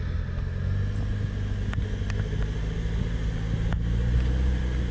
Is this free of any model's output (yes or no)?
yes